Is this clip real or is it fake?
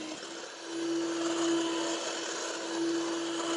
real